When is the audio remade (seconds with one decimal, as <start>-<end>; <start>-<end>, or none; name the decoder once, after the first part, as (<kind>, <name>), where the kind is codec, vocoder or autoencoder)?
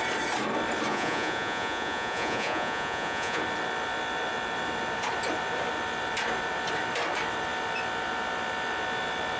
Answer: 0.9-3.4 (vocoder, Vocos)